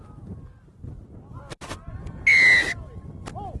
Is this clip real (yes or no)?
yes